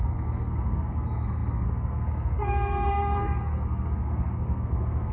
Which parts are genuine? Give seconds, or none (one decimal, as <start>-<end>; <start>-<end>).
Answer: none